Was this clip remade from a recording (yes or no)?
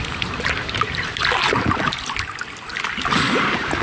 no